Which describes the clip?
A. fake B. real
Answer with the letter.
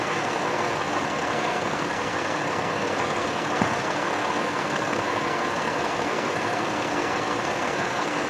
A